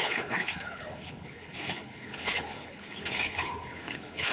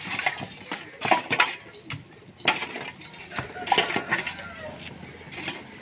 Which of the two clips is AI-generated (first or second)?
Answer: first